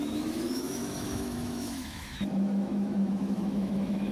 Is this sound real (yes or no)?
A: no